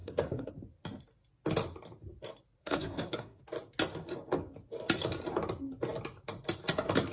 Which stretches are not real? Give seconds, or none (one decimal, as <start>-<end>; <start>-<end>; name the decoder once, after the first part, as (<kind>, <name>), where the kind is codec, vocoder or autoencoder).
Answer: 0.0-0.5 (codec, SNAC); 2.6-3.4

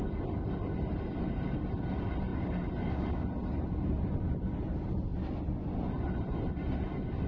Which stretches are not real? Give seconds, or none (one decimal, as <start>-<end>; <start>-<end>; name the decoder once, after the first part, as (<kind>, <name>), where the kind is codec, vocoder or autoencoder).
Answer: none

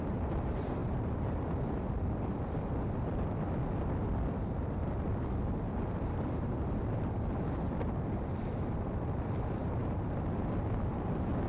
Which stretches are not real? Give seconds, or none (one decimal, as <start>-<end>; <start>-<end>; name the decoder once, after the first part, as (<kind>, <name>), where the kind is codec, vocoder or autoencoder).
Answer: 0.0-9.8 (vocoder, BigVGAN v2); 10.6-11.5

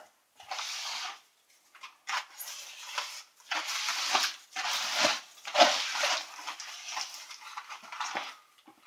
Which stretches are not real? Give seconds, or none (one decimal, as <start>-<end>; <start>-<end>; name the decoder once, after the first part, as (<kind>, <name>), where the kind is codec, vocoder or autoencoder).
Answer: none

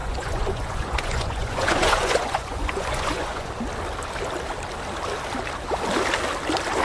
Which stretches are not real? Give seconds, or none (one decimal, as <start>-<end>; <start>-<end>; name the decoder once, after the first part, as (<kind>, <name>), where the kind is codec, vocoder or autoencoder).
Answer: 0.0-3.5 (vocoder, Vocos)

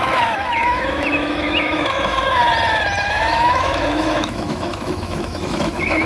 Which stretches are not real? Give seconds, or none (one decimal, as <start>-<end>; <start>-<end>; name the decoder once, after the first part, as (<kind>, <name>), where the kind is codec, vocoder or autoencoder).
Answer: 0.0-2.4 (autoencoder, DAC-VAE); 3.1-6.0